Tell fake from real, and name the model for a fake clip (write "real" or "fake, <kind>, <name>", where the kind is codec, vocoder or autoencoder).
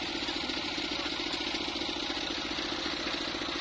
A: real